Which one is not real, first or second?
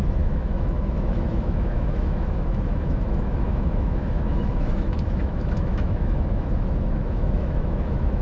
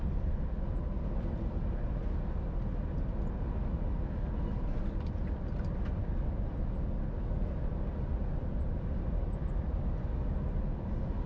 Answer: first